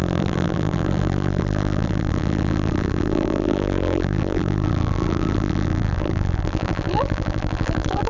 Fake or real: fake